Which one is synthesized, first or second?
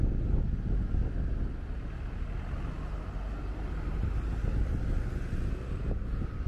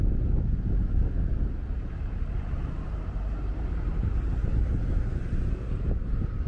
second